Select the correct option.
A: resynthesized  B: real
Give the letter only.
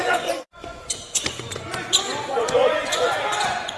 A